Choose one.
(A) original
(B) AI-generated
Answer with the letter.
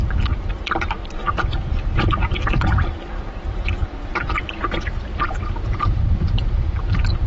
B